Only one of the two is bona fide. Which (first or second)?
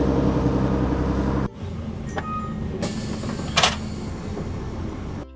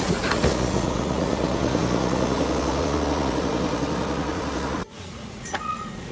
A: first